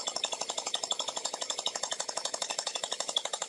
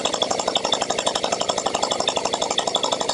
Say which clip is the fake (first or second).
first